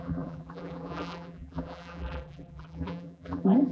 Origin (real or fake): fake